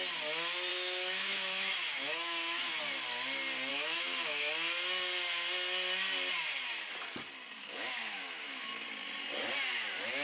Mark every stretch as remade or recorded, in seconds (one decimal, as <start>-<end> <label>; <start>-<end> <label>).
0.0-0.7 recorded; 0.7-2.8 remade; 2.8-3.7 recorded; 3.7-4.5 remade; 4.5-7.6 recorded; 7.6-8.7 remade; 8.7-10.2 recorded